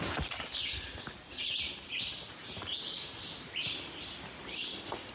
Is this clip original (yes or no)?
yes